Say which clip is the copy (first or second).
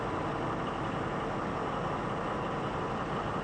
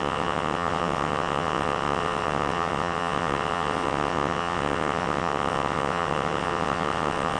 second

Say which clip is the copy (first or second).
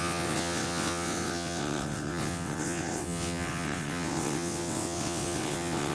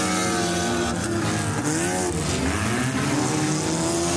first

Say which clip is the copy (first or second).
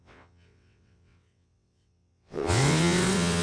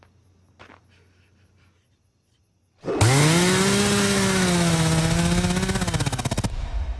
first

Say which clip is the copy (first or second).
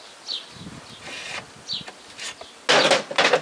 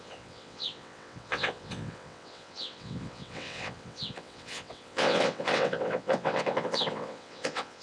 second